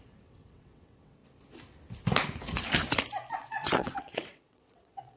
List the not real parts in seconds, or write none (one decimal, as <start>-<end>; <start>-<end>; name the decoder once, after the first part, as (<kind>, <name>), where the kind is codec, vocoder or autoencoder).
0.0-1.2 (vocoder, WaveNeXt); 3.3-5.2